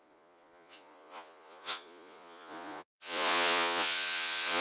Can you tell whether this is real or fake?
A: fake